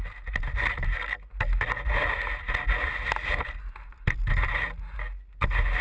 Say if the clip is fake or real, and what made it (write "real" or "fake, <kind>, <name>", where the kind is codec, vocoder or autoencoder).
real